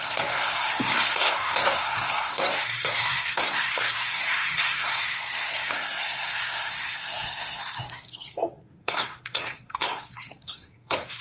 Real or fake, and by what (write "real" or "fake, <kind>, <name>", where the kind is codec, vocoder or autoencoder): fake, codec, SNAC